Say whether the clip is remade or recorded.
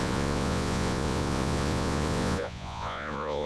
remade